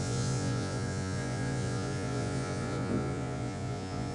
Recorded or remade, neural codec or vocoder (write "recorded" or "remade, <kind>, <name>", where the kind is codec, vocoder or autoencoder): remade, vocoder, Vocos